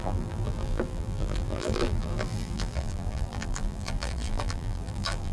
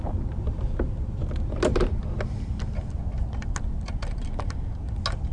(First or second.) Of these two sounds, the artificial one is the first